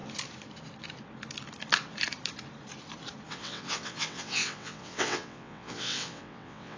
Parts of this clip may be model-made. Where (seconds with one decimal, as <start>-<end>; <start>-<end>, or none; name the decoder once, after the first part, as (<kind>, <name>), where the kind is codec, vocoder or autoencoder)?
3.3-6.8 (vocoder, WaveNeXt)